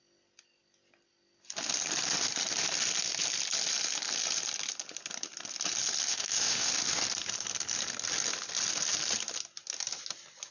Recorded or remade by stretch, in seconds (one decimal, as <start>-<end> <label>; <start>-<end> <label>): 0.0-6.1 recorded; 6.1-6.7 remade; 6.7-10.5 recorded